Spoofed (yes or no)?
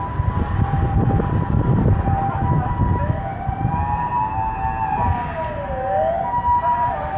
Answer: no